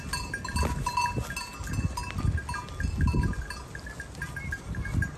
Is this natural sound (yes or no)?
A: yes